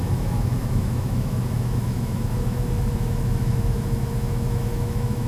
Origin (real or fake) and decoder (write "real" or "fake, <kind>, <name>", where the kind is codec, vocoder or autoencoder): fake, autoencoder, DAC-VAE